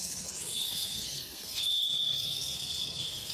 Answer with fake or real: fake